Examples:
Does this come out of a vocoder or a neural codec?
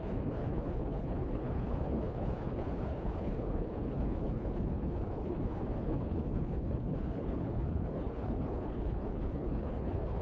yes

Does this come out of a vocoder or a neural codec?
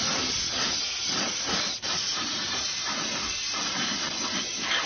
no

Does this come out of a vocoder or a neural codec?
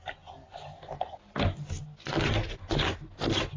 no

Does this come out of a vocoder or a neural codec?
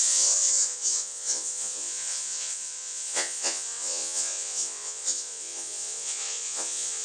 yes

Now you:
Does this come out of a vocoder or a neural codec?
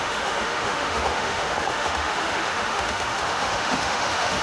yes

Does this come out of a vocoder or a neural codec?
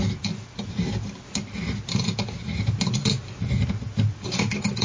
no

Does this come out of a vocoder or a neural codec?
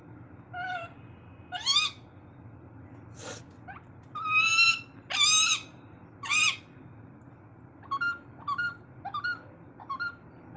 no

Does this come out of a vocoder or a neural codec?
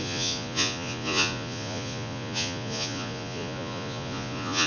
yes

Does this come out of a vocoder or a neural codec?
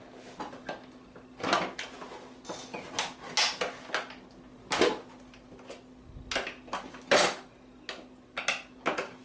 no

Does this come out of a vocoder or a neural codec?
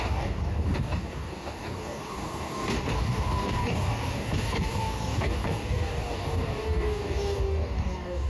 yes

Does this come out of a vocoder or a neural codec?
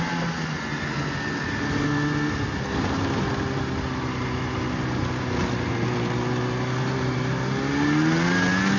no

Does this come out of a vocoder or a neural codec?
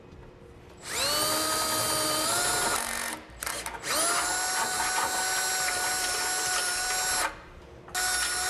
no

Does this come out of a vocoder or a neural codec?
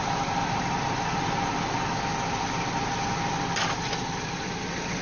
no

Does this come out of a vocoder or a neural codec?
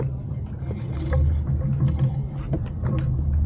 no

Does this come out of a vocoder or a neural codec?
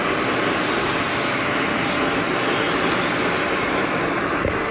no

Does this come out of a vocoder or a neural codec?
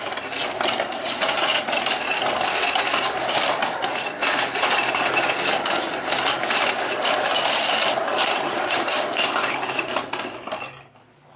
no